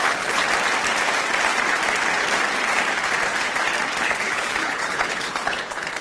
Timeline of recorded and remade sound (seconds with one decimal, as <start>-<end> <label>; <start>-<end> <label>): 0.0-0.4 remade; 0.4-4.0 recorded; 4.0-6.0 remade